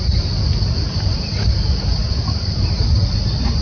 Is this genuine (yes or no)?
yes